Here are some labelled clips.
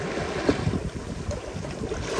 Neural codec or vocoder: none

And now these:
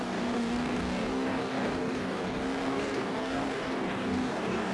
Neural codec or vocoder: codec, DAC